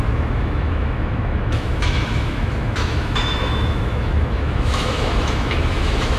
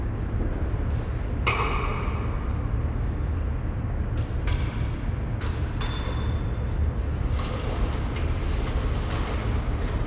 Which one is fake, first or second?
first